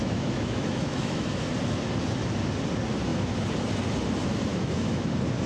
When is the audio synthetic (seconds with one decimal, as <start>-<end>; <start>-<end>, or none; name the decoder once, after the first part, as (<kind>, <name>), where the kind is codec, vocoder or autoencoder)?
0.0-1.5 (autoencoder, DAC-VAE); 4.5-5.1